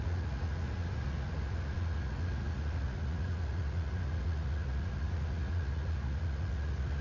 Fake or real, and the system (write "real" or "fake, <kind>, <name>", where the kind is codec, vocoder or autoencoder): fake, vocoder, Vocos